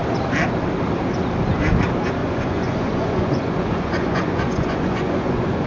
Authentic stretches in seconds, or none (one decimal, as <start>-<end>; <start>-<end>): 0.0-2.2